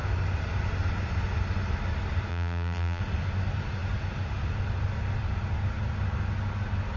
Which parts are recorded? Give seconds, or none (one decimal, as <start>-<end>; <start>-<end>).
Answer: 0.0-2.3; 3.0-7.0